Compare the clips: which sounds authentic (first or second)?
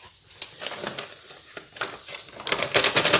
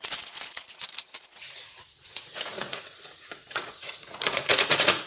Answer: first